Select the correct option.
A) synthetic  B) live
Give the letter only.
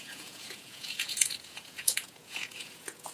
A